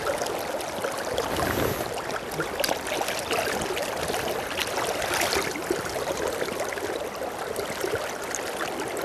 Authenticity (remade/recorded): recorded